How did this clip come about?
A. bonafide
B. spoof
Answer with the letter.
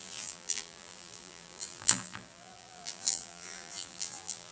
B